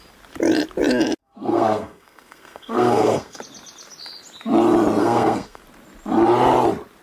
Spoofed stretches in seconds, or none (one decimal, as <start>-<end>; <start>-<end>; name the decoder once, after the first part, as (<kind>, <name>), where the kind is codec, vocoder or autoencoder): 1.2-3.4 (codec, SNAC); 5.0-5.6